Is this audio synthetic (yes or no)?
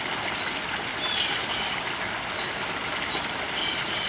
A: no